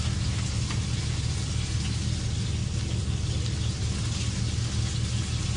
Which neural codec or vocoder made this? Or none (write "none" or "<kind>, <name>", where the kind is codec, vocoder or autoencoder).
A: none